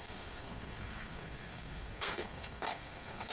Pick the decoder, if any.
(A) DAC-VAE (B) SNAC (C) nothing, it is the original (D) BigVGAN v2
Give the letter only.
B